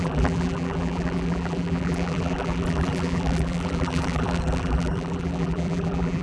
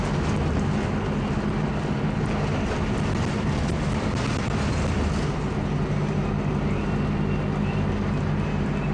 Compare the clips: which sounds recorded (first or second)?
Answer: second